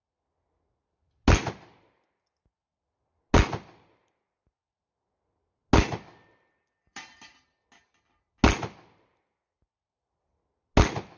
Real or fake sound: real